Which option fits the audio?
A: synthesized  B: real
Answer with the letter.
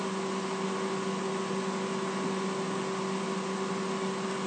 B